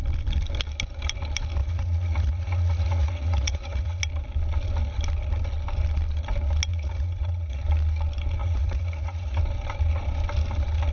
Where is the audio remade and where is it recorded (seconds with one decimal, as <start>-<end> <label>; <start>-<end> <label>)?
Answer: 0.0-1.6 recorded; 1.6-4.0 remade; 4.0-6.7 recorded; 6.7-7.6 remade; 7.6-8.4 recorded; 8.4-9.4 remade; 9.4-10.9 recorded